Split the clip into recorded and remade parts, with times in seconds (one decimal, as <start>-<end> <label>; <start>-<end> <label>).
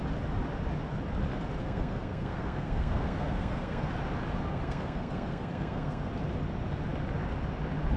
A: 0.0-1.6 recorded; 1.6-3.9 remade; 3.9-4.5 recorded; 4.5-6.1 remade; 6.1-8.0 recorded